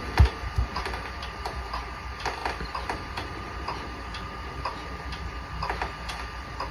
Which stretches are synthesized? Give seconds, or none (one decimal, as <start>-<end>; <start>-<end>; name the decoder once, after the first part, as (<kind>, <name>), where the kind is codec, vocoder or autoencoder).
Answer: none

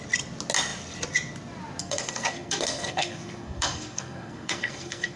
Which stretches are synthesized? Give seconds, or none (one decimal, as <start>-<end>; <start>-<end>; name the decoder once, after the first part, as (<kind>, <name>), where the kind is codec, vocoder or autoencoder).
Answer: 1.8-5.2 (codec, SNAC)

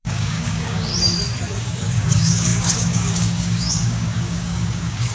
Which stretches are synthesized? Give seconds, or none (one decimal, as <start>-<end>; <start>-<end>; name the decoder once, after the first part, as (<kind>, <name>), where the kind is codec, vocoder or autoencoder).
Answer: 0.0-0.9 (codec, DAC); 1.6-5.1

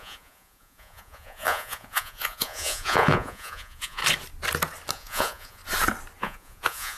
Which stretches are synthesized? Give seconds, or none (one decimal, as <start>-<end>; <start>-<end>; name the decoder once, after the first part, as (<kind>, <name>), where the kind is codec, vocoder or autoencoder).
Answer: 0.0-4.0 (vocoder, Vocos); 4.9-5.6; 6.2-7.0